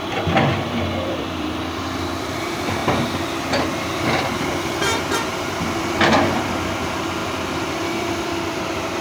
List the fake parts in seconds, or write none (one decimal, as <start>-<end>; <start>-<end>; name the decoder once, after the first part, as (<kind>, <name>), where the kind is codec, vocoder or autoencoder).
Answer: 0.0-2.8 (vocoder, BigVGAN v2); 4.0-9.0